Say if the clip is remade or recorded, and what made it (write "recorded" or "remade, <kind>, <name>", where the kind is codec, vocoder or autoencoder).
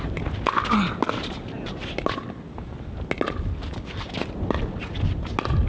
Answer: recorded